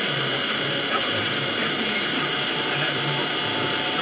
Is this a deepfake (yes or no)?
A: yes